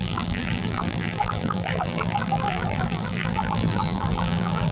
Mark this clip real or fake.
fake